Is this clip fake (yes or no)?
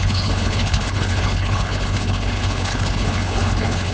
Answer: yes